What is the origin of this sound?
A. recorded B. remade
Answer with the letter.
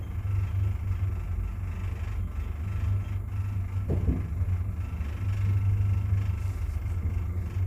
A